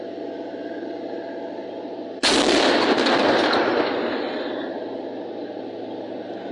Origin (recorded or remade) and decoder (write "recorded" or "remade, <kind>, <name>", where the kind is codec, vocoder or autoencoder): recorded